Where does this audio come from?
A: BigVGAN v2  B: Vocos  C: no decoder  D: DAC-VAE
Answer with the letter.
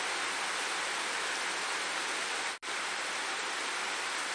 C